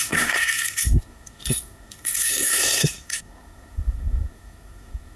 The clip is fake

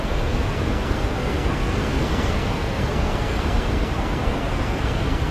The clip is fake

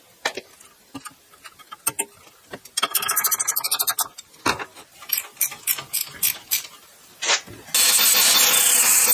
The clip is real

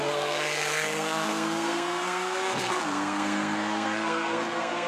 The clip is fake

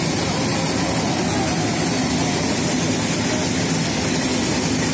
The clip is real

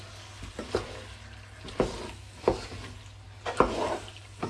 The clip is real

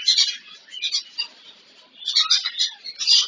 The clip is real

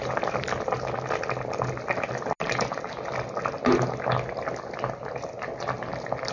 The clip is real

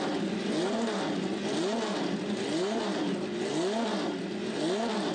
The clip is real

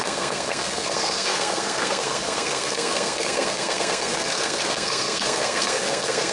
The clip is fake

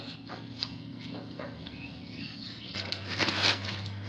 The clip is fake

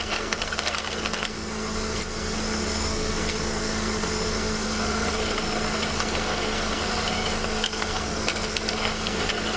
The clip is fake